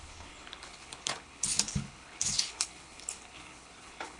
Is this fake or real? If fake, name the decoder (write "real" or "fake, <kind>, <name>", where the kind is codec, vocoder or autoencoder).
fake, codec, HILCodec